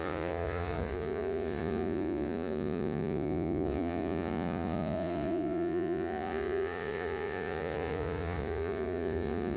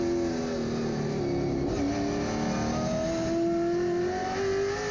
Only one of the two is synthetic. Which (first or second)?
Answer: first